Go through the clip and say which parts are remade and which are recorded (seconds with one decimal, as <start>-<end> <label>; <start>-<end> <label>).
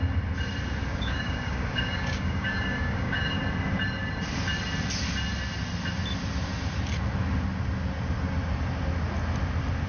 0.0-0.9 recorded; 0.9-3.4 remade; 3.4-9.9 recorded